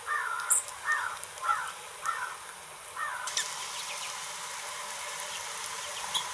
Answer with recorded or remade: recorded